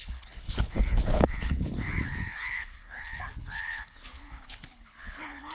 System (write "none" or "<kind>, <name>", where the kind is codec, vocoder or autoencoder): codec, HILCodec